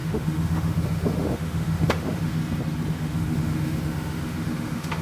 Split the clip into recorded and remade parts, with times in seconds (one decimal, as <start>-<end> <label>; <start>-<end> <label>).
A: 0.0-2.4 remade; 2.4-2.9 recorded; 2.9-5.0 remade